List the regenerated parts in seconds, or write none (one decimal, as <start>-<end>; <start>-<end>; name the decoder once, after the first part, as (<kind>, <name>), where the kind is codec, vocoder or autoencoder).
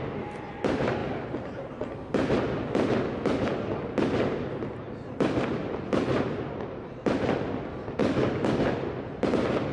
8.0-8.6 (codec, DAC)